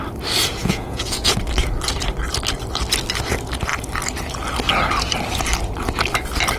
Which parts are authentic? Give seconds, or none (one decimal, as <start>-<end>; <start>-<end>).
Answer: 0.0-0.6; 1.3-6.6